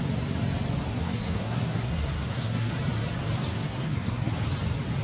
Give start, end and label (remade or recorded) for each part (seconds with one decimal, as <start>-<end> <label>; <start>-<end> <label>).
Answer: 0.0-0.9 recorded; 0.9-2.7 remade; 2.7-3.5 recorded; 3.5-4.3 remade; 4.3-5.0 recorded